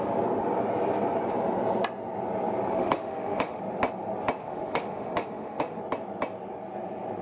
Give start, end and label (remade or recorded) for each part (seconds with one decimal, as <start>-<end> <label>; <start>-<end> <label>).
0.0-2.7 recorded; 2.7-3.6 remade; 3.6-4.4 recorded; 4.4-5.8 remade; 5.8-7.2 recorded